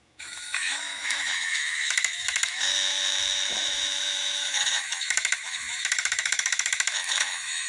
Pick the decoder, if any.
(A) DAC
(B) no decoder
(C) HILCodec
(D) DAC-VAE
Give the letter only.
D